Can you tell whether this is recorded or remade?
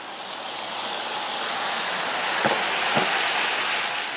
recorded